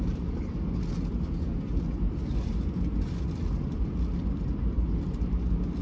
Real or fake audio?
real